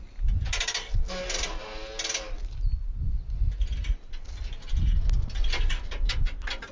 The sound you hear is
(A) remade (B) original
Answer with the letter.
B